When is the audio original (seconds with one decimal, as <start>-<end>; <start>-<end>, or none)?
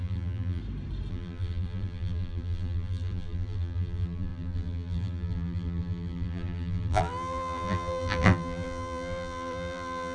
0.6-1.1